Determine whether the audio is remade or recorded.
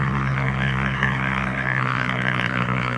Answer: remade